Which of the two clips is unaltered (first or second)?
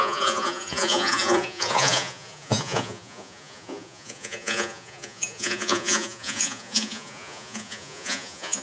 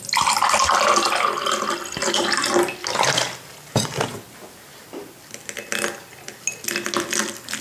second